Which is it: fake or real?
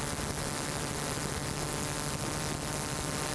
real